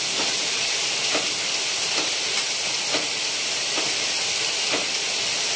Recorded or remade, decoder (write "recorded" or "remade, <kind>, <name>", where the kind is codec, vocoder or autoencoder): recorded